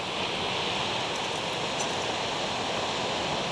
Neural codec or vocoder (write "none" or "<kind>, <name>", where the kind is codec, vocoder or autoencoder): none